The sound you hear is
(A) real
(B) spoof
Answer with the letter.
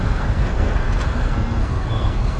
B